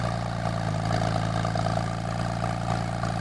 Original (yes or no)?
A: yes